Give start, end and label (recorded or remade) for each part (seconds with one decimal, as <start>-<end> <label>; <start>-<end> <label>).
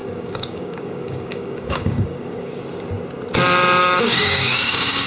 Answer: 0.0-2.6 remade; 2.6-3.8 recorded; 3.8-5.1 remade